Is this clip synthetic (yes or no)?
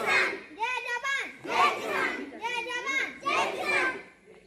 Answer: no